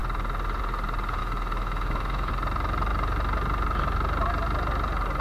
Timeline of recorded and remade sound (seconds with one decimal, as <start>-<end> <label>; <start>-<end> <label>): 0.0-1.2 recorded; 1.2-2.3 remade; 2.3-5.2 recorded